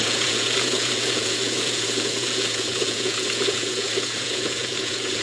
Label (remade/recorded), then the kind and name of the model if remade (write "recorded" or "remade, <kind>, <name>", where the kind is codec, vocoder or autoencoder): remade, vocoder, Vocos